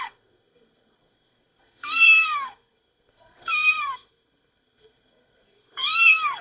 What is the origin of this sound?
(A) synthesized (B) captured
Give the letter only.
A